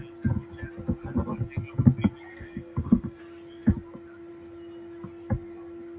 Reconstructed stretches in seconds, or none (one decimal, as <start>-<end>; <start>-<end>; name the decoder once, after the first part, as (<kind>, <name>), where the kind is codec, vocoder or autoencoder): 2.3-3.2 (codec, SNAC)